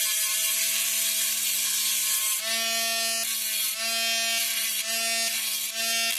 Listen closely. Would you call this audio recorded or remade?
recorded